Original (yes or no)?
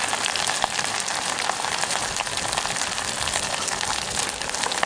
yes